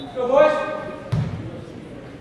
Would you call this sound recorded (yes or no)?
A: yes